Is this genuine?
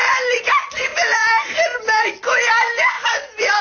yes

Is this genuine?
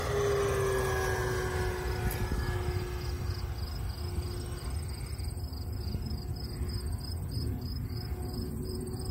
yes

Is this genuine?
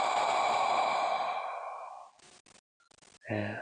yes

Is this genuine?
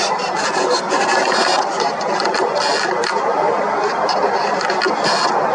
yes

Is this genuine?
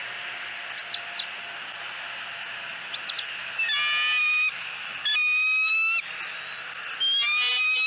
yes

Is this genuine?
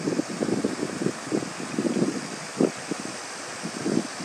yes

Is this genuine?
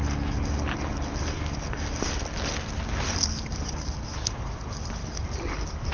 yes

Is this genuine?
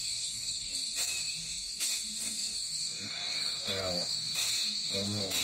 no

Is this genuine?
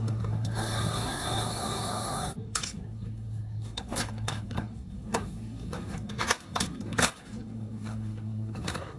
no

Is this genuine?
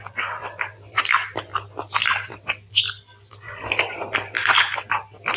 yes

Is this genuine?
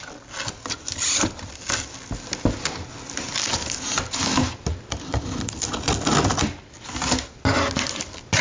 yes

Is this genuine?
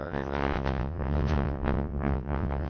no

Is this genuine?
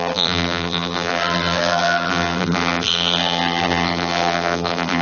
no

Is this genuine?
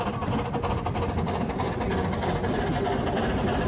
yes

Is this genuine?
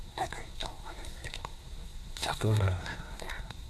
no